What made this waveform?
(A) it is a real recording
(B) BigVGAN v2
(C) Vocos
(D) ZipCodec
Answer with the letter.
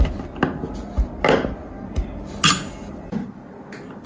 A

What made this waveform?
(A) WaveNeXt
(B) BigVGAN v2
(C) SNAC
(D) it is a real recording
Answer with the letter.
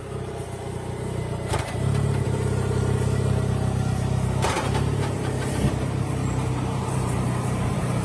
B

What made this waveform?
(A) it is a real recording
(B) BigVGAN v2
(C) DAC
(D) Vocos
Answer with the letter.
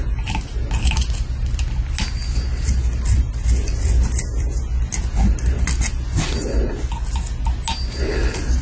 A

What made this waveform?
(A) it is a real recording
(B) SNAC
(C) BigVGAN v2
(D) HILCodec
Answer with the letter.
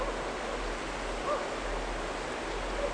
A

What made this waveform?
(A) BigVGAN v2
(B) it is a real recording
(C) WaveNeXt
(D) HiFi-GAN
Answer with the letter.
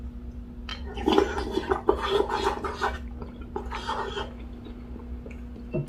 B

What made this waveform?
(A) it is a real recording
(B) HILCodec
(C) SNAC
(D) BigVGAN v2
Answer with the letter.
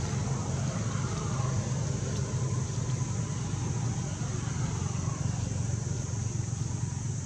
A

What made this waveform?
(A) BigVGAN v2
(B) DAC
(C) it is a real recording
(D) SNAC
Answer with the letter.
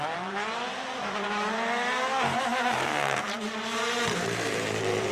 A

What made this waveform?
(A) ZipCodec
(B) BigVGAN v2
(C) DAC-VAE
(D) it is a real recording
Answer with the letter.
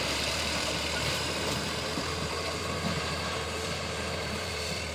B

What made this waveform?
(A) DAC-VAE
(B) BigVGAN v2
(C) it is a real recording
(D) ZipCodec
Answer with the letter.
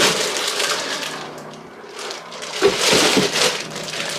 B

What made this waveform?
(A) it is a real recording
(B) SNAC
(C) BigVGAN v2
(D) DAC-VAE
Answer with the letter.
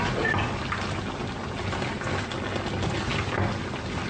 A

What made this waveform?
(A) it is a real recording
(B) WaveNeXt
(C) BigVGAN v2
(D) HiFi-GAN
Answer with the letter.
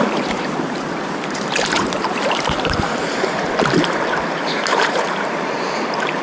C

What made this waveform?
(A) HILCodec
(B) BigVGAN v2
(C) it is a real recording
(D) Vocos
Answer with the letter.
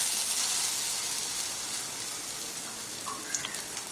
C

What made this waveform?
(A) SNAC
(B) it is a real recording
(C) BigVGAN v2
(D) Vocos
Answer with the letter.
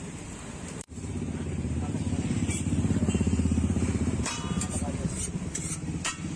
C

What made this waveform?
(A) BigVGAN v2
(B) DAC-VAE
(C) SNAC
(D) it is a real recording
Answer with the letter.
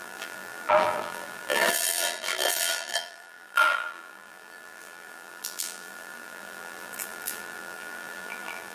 A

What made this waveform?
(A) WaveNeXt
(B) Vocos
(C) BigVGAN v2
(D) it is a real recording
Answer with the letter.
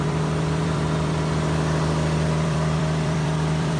C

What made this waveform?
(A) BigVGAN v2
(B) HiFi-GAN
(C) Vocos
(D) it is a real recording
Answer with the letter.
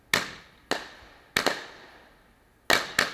D